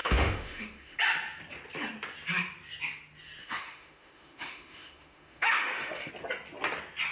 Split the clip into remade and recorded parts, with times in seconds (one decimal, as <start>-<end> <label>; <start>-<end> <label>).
0.0-1.0 remade; 1.0-3.4 recorded; 3.4-6.1 remade; 6.1-7.1 recorded